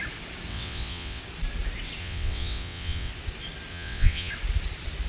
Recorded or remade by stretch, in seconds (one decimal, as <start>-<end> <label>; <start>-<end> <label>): 0.0-0.5 recorded; 0.5-1.2 remade; 1.2-2.0 recorded; 2.0-3.1 remade; 3.1-3.7 recorded; 3.7-4.3 remade; 4.3-5.1 recorded